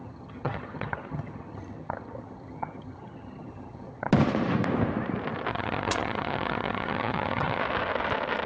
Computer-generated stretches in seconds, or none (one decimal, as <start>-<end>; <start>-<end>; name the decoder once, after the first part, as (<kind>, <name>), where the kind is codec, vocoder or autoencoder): 0.0-4.1 (vocoder, HiFi-GAN); 5.5-7.6